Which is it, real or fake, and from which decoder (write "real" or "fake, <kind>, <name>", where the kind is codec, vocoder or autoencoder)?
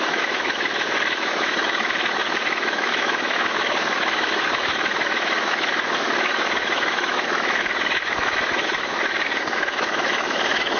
fake, autoencoder, DAC-VAE